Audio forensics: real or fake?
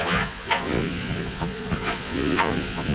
fake